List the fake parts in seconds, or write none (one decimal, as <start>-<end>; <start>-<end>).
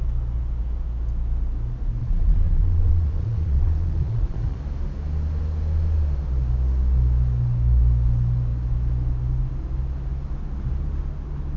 2.0-4.6